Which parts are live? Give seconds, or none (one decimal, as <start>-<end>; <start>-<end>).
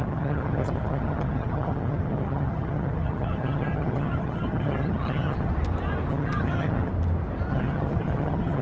5.5-6.1; 6.9-7.5